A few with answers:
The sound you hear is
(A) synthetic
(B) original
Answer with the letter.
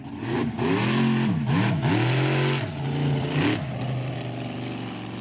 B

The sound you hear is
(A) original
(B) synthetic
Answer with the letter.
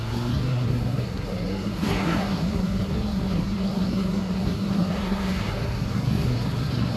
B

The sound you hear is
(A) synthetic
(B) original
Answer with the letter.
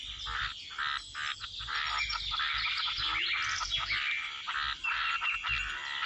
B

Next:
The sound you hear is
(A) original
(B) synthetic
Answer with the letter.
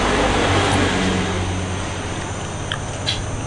A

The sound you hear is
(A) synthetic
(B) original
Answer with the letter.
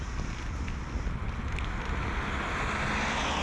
B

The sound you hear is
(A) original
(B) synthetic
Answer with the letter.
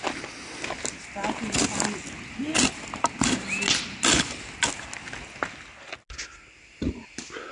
A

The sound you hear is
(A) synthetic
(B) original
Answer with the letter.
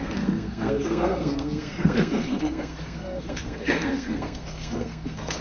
A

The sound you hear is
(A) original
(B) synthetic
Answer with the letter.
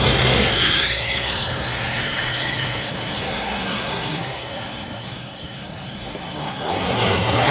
B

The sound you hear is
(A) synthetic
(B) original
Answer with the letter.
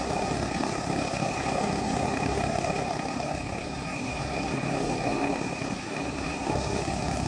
A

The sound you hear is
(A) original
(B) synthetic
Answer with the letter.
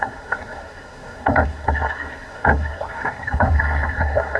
B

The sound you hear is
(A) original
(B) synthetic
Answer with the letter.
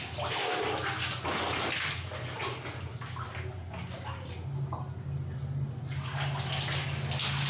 A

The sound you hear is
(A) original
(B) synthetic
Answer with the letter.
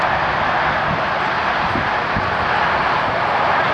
A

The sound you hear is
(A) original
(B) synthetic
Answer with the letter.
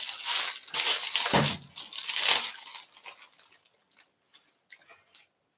A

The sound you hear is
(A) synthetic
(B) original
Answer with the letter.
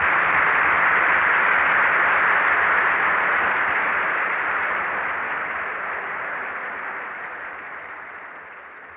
B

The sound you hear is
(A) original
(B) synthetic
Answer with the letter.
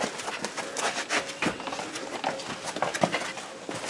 A